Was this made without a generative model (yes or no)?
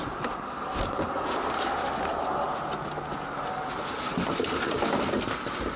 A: yes